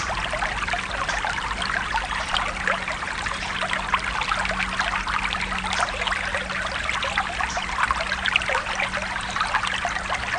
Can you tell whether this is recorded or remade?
recorded